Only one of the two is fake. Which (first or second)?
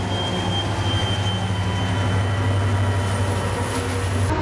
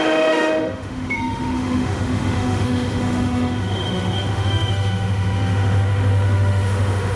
second